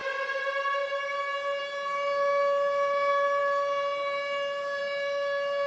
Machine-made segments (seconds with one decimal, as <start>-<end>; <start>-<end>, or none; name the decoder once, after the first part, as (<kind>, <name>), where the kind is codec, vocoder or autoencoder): none

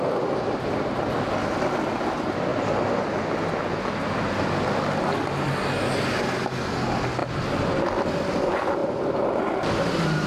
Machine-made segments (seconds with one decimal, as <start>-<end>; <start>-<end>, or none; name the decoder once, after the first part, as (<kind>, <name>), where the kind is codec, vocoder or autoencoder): none

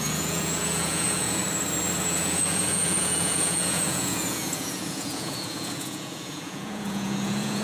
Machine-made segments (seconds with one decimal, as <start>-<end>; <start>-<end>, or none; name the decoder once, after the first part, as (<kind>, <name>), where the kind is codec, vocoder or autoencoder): 0.0-1.4 (vocoder, Vocos); 2.0-7.6

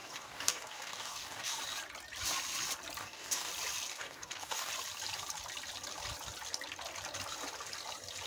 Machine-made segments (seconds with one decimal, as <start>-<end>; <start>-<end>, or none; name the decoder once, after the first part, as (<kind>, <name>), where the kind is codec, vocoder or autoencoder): 0.0-1.6 (codec, DAC); 3.0-3.5; 3.9-4.7

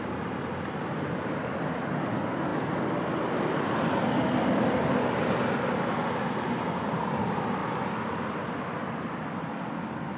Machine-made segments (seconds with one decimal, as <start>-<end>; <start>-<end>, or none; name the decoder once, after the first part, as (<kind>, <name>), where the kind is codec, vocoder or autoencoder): none

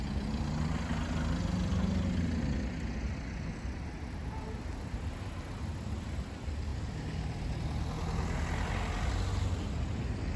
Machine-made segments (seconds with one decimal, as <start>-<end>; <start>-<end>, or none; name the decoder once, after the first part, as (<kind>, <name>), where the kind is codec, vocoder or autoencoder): none

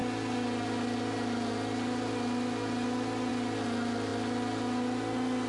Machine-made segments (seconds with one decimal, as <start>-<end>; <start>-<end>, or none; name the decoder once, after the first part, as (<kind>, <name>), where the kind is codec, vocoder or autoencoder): none